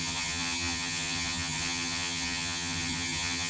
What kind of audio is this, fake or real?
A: fake